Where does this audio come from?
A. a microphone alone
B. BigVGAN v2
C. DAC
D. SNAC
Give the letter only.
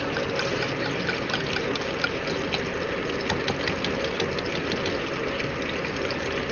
A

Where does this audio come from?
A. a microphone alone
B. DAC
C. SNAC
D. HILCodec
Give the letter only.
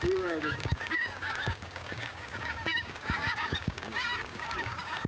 B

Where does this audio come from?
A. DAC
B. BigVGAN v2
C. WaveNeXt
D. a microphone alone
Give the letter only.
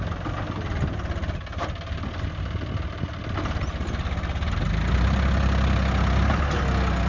D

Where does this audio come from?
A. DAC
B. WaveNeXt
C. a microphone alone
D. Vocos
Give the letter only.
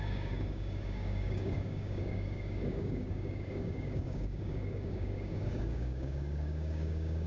A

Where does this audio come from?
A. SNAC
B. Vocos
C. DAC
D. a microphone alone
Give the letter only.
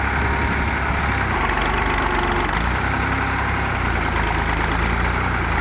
D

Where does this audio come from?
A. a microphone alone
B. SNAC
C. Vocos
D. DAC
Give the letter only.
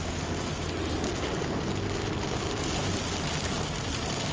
A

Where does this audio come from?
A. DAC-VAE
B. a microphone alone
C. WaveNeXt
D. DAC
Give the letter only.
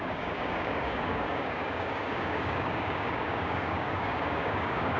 D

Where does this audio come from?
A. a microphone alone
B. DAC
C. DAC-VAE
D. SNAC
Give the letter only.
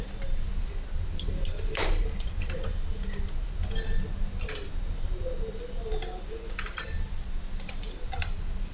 A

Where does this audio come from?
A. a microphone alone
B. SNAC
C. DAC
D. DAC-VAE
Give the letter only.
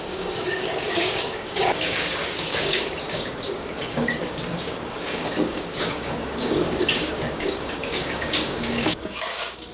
C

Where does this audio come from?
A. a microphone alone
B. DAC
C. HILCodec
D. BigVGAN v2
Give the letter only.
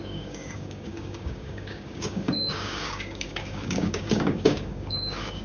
B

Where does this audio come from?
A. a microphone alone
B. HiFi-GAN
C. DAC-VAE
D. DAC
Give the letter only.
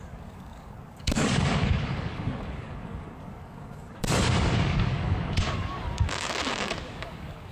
D